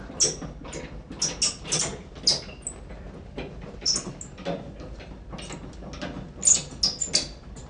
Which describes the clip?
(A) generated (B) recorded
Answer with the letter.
B